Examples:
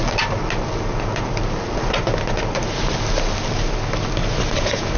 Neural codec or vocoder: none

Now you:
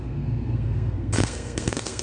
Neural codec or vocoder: codec, SNAC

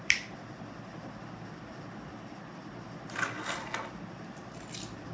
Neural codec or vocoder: none